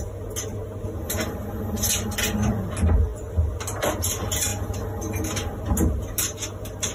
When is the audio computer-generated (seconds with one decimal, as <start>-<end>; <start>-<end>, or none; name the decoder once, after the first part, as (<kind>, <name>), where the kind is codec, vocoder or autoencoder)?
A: none